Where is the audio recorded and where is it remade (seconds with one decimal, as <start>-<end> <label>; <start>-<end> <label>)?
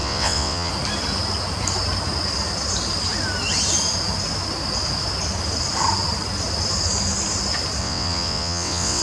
0.0-0.7 remade; 0.7-7.8 recorded; 7.8-9.0 remade